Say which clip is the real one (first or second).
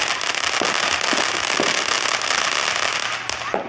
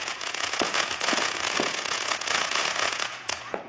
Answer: first